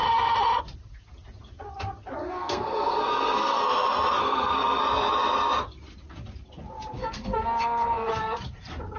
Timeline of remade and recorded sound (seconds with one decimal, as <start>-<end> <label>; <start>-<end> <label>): 0.0-2.2 recorded; 2.2-3.6 remade; 3.6-4.2 recorded; 4.2-4.8 remade; 4.8-7.0 recorded; 7.0-8.1 remade; 8.1-9.0 recorded

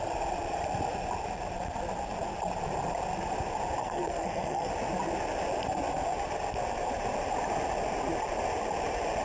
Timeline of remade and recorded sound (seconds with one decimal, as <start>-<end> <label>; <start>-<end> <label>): 0.0-3.8 recorded; 3.8-4.7 remade; 4.7-9.2 recorded

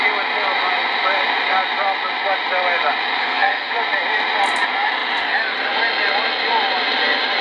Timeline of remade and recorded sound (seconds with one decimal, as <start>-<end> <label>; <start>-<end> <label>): 0.0-3.2 recorded; 3.2-3.7 remade; 3.7-7.4 recorded

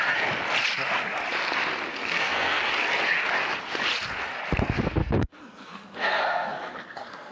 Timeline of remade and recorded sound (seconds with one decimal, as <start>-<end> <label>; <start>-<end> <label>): 0.0-1.9 recorded; 1.9-2.6 remade; 2.6-5.0 recorded; 5.0-7.3 remade

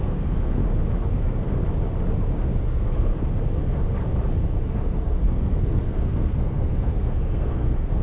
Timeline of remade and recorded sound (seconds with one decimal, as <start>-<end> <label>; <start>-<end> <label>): 0.0-0.6 remade; 0.6-1.1 recorded; 1.1-1.6 remade; 1.6-2.6 recorded; 2.6-3.1 remade; 3.1-4.7 recorded; 4.7-8.0 remade

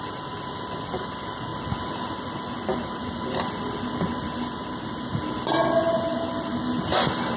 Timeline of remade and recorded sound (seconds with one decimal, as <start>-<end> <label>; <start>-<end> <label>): 0.0-7.4 recorded